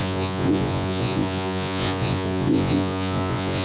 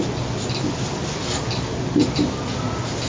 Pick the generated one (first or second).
first